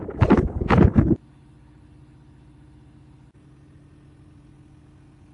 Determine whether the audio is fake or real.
real